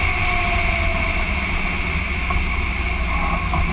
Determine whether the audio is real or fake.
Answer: real